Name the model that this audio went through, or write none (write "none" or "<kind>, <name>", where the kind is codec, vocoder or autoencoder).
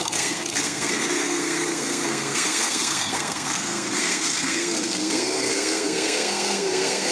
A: codec, SNAC